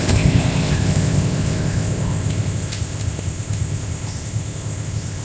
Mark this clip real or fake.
fake